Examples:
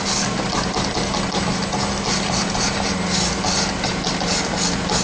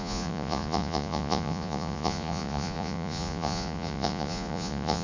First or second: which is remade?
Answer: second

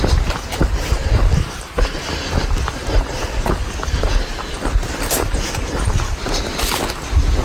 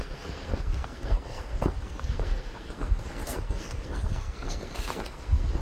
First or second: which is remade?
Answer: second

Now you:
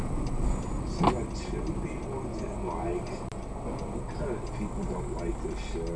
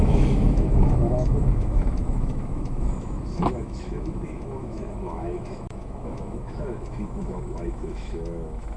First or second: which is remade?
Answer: second